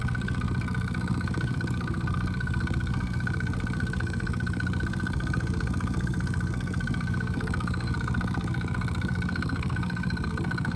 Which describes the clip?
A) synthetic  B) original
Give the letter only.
A